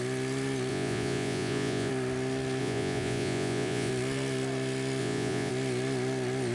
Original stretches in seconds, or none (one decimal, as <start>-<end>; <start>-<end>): 0.0-0.7; 1.9-2.6; 3.9-5.0; 5.5-6.5